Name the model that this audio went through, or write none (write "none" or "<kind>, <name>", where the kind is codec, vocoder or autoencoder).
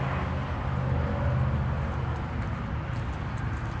none